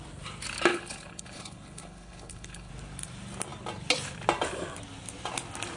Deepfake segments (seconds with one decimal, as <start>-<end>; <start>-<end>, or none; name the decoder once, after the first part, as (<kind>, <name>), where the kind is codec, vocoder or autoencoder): 0.7-2.7 (codec, HILCodec)